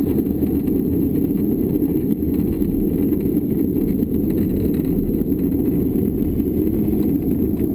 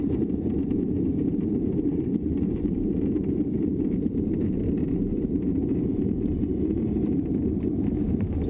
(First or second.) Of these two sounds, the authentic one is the first